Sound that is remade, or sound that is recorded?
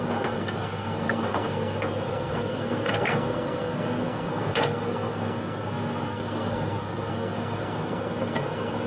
remade